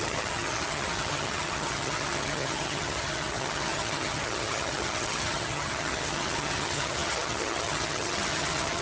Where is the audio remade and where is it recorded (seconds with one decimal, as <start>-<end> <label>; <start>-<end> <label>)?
0.0-8.8 remade